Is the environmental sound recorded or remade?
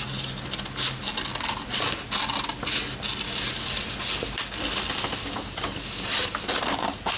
recorded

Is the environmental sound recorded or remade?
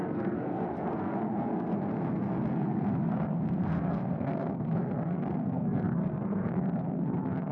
remade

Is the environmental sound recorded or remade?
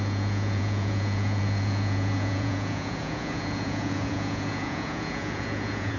remade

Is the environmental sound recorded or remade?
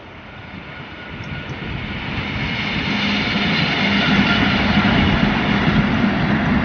recorded